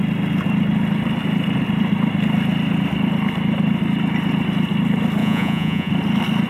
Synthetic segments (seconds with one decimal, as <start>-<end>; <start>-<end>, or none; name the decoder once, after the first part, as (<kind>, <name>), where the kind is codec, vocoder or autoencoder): 5.2-5.9 (vocoder, Vocos)